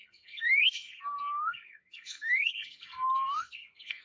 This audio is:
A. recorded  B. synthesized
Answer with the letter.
B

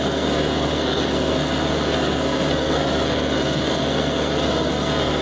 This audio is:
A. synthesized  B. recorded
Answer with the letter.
A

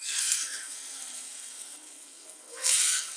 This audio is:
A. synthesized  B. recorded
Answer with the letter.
A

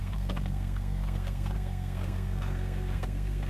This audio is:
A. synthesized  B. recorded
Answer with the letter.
A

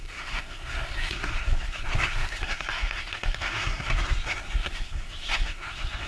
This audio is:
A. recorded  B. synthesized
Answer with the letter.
B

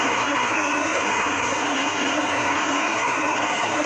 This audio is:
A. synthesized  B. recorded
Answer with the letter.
A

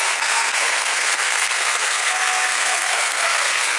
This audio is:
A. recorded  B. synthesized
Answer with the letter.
B